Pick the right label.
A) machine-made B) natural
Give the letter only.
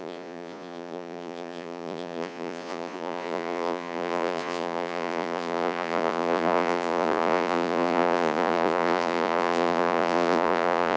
A